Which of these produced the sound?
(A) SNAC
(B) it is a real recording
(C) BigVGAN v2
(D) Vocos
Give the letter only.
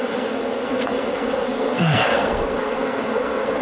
A